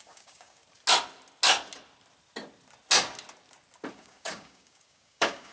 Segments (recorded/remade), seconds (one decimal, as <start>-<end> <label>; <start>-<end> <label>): 0.0-0.6 remade; 0.6-3.9 recorded; 3.9-5.5 remade